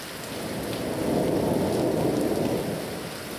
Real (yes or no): yes